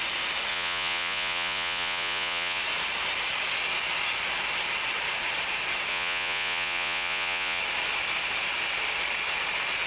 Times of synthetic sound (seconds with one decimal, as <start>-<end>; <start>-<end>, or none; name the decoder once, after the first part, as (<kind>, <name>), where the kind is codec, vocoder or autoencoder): 0.5-2.6 (vocoder, Vocos); 5.9-7.6